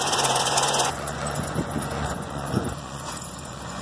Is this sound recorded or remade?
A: remade